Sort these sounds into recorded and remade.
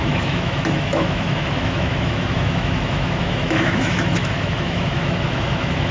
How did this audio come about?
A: remade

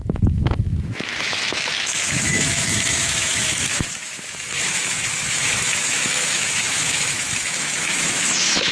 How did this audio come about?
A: remade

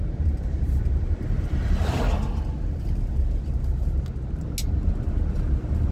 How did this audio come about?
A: recorded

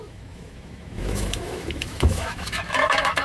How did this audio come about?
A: remade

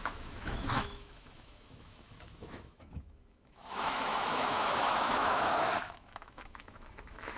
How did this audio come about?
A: remade